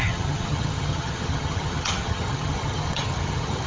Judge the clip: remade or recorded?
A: remade